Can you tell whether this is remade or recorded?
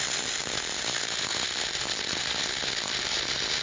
recorded